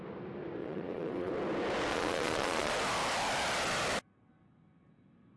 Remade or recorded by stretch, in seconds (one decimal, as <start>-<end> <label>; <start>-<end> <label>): 0.0-0.6 recorded; 0.6-1.3 remade; 1.3-1.9 recorded; 1.9-2.7 remade; 2.7-5.4 recorded